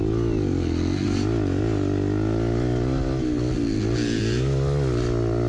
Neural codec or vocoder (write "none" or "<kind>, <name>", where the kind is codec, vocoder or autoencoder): none